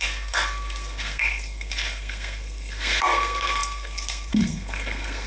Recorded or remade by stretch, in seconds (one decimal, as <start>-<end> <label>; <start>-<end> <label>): 0.0-5.3 remade